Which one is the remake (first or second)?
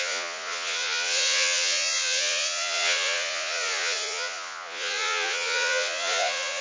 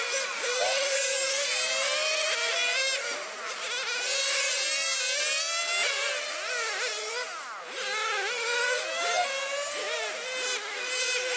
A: first